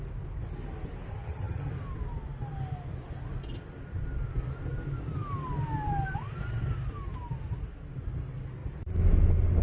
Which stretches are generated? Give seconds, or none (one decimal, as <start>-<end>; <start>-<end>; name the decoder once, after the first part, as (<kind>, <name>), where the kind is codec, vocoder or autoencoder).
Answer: 1.1-1.7 (vocoder, HiFi-GAN)

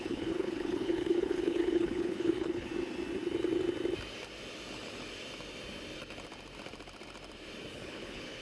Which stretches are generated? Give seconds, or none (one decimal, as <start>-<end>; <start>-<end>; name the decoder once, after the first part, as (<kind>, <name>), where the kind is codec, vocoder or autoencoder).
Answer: 0.0-2.7 (codec, HILCodec); 7.7-8.4

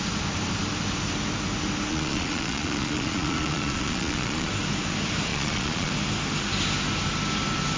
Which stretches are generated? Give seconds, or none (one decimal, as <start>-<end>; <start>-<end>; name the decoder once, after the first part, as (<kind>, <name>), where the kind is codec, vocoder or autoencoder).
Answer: 1.9-4.5 (vocoder, Vocos); 5.3-5.9

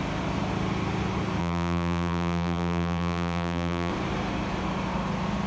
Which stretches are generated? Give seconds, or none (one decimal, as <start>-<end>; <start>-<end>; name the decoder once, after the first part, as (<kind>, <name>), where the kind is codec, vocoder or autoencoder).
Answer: 1.4-3.9 (vocoder, BigVGAN v2)

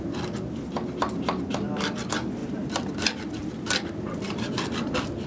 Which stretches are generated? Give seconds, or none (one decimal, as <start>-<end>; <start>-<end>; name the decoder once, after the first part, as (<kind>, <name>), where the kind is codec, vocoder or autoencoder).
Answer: none

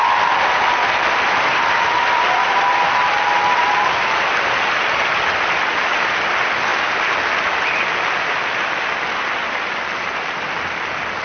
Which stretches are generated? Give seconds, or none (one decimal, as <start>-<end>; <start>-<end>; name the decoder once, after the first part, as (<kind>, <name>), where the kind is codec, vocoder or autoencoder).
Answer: none

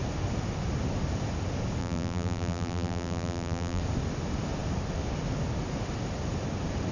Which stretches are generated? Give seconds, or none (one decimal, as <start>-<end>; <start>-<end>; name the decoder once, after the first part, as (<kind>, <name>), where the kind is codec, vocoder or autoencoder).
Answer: 1.8-3.8 (vocoder, BigVGAN v2)